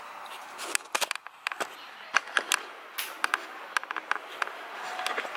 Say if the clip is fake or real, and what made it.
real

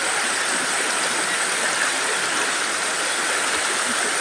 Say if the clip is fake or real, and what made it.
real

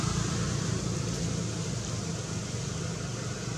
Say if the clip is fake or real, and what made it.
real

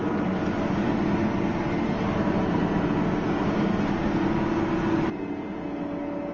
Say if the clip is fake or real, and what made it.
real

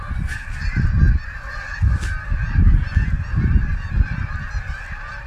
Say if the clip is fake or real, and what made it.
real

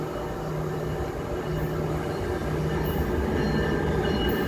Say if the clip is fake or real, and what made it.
real